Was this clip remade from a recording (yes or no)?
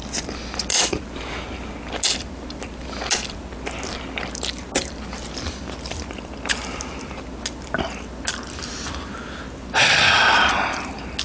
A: no